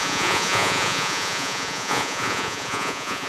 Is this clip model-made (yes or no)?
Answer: yes